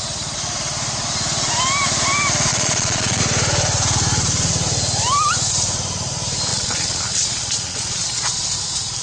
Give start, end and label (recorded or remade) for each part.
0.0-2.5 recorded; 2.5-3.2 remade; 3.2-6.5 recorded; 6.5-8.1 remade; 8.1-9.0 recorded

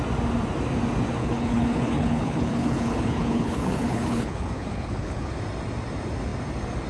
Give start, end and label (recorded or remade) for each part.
0.0-1.2 recorded; 1.2-5.3 remade; 5.3-6.9 recorded

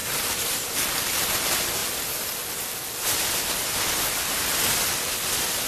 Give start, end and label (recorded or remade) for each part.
0.0-1.3 remade; 1.3-5.7 recorded

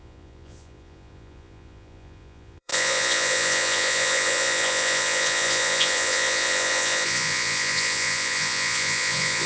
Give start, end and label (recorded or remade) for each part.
0.0-9.5 remade